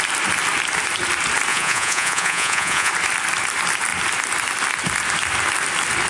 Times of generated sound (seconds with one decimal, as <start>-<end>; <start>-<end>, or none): 1.5-2.9